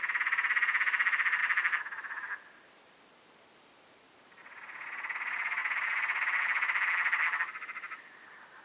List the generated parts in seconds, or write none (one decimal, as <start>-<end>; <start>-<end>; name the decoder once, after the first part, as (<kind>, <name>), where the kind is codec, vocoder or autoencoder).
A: 0.0-8.6 (vocoder, BigVGAN v2)